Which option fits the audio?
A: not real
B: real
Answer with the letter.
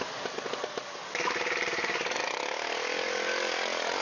A